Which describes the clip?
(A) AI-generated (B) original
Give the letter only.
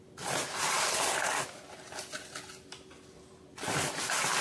B